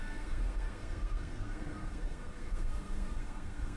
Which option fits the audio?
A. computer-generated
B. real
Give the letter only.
A